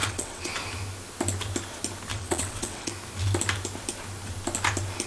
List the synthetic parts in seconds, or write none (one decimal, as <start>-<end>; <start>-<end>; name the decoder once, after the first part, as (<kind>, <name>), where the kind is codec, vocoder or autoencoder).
0.0-0.5 (vocoder, WaveNeXt); 2.1-2.9